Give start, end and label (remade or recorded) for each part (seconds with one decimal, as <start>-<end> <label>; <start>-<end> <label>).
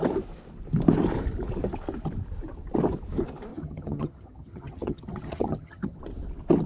0.0-3.5 recorded; 3.5-6.0 remade; 6.0-6.7 recorded